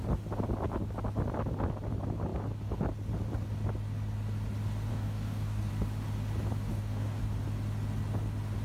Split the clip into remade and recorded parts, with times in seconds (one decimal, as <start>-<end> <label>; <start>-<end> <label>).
0.0-4.9 recorded; 4.9-5.7 remade; 5.7-6.7 recorded; 6.7-7.2 remade; 7.2-8.6 recorded